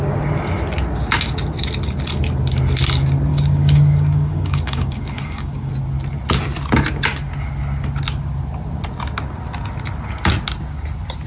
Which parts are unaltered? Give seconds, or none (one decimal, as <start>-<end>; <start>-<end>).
0.0-3.3; 5.7-11.3